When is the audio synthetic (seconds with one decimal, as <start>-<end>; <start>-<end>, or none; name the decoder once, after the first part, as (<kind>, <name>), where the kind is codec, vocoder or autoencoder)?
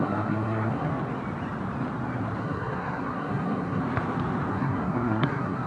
0.0-0.9 (codec, SNAC); 2.4-3.8; 4.5-5.7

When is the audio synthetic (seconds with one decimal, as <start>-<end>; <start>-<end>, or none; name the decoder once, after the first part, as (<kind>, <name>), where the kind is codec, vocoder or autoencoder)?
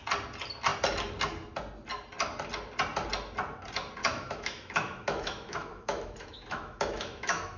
4.0-7.6 (autoencoder, DAC-VAE)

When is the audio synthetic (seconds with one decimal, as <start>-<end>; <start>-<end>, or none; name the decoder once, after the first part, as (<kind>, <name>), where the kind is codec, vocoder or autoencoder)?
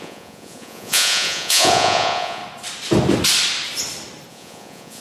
0.0-2.4 (vocoder, Vocos); 4.3-5.0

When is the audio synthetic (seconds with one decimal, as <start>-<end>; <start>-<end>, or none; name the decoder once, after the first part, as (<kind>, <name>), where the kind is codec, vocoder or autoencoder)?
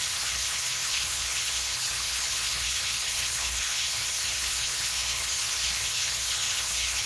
0.0-7.1 (codec, HILCodec)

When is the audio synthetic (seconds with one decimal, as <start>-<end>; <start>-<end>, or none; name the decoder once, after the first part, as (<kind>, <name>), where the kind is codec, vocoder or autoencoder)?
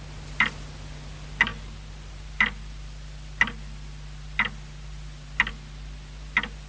none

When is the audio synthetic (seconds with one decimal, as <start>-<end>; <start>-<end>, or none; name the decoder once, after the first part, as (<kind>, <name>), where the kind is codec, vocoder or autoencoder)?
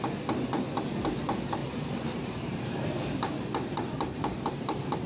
1.6-5.1 (vocoder, BigVGAN v2)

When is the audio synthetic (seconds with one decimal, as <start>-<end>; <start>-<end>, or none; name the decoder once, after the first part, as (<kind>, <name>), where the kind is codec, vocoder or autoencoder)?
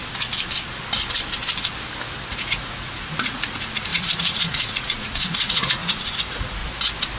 2.3-6.6 (vocoder, Vocos)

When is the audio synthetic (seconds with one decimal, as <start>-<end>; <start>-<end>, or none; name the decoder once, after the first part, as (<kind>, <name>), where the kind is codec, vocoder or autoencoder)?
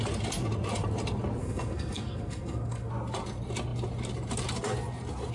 1.4-2.9 (codec, SNAC)